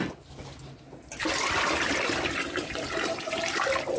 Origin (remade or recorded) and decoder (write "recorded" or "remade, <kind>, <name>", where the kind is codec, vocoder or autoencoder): recorded